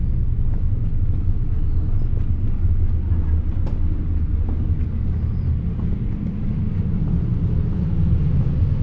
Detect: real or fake real